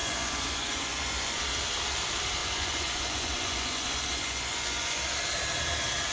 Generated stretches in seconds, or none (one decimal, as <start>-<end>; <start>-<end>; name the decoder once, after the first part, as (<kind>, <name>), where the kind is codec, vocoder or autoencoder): 0.0-1.4 (vocoder, Vocos); 2.4-5.0